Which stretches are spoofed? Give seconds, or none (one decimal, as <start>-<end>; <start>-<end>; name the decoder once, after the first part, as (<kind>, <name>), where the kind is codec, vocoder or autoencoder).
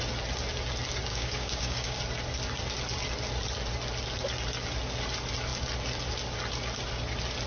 1.1-2.0 (codec, DAC)